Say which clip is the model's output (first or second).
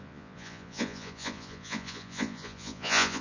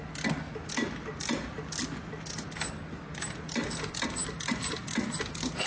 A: first